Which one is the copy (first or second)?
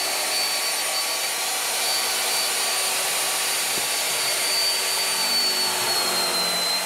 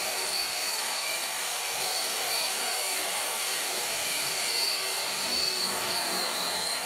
second